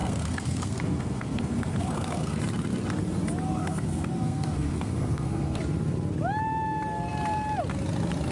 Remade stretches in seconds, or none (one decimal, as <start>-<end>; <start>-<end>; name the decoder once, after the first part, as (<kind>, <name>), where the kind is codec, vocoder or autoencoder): 0.0-2.4 (codec, SNAC); 3.6-5.6